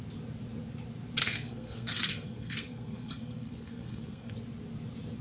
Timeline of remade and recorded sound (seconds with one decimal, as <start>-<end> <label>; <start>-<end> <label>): 0.0-1.2 recorded; 1.2-4.3 remade; 4.3-5.2 recorded